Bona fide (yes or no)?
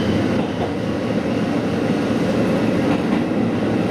yes